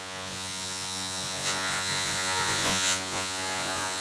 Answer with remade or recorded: remade